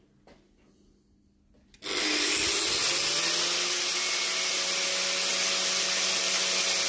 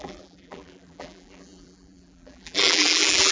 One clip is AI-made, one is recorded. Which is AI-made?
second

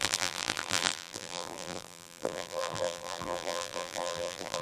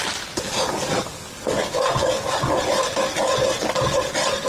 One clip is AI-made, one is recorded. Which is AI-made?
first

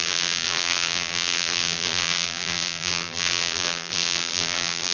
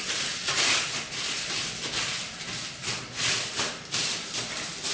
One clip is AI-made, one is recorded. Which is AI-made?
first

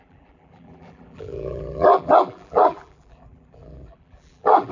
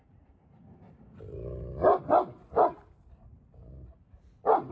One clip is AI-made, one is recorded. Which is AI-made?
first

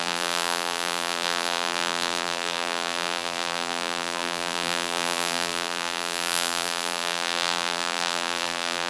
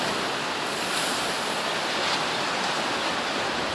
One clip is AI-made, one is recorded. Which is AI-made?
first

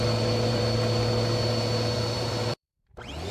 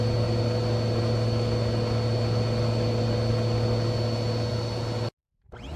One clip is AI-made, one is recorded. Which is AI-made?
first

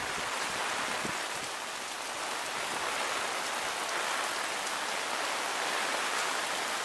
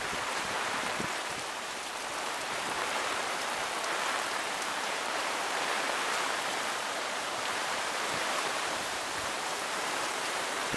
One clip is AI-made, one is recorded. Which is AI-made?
second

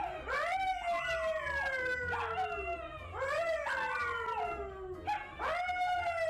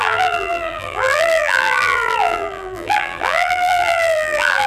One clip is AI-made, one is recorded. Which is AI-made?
second